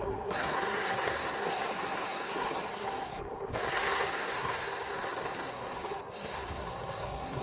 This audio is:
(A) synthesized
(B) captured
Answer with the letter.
A